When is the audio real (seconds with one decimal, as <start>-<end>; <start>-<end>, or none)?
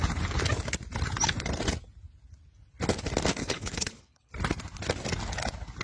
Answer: 0.0-3.4; 4.3-5.8